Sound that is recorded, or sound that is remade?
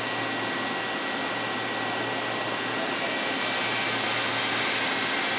recorded